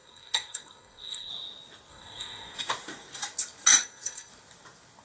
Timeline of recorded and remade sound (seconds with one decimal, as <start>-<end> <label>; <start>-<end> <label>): 0.0-1.3 remade; 1.3-1.9 recorded; 1.9-2.6 remade; 2.6-3.8 recorded; 3.8-4.3 remade; 4.3-5.0 recorded